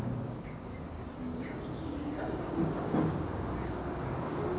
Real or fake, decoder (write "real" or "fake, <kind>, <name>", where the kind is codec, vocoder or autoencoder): fake, codec, DAC